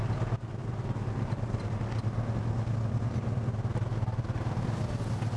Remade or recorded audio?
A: recorded